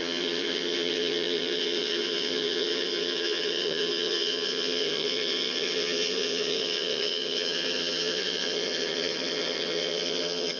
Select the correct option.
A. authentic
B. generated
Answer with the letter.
B